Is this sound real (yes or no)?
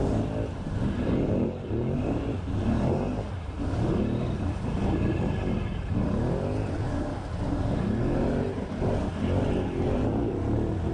yes